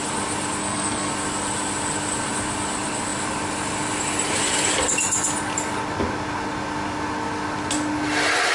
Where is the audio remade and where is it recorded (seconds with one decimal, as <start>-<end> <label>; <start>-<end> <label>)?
0.0-0.6 recorded; 0.6-1.1 remade; 1.1-8.5 recorded